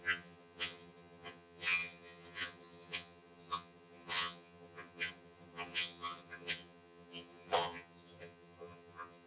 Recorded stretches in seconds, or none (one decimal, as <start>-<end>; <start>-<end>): none